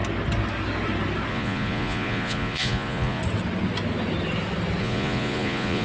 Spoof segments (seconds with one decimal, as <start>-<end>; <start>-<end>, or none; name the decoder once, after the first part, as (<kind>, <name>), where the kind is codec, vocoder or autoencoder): 1.3-3.2 (vocoder, Vocos); 4.8-5.8